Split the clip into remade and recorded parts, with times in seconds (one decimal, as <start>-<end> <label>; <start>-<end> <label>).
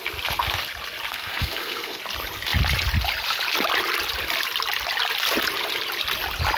0.0-1.1 recorded; 1.1-2.0 remade; 2.0-6.6 recorded